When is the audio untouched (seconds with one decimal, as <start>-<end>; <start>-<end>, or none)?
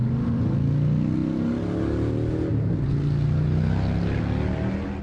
0.0-5.0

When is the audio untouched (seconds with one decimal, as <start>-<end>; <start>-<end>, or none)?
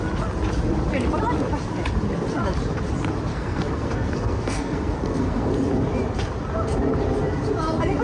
0.0-3.3; 5.5-8.0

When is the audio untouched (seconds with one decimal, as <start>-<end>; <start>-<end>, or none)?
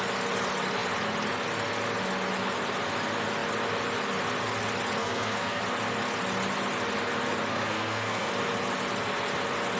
0.0-5.0; 5.6-7.5; 8.3-9.8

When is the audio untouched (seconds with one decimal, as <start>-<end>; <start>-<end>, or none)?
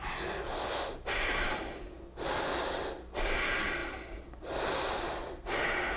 0.0-6.0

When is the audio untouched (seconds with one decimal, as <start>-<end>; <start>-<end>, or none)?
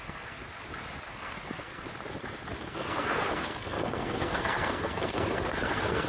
0.4-1.1; 1.9-2.6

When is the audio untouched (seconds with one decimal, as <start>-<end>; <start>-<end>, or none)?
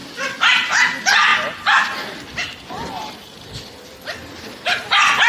0.0-5.3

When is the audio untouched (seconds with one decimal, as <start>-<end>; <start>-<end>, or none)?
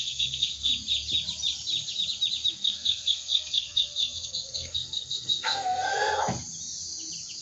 0.7-2.5; 5.9-7.4